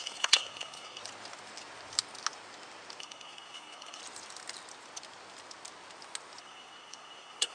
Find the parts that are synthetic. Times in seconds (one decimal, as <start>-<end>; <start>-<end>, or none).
0.0-1.0; 3.0-4.0; 6.4-7.5